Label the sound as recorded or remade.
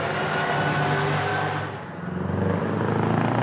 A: recorded